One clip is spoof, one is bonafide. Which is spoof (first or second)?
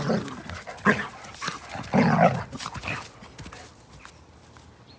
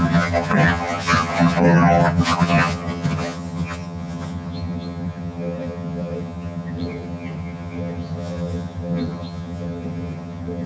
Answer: second